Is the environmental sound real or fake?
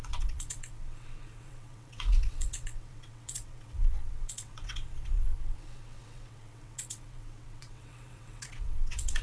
fake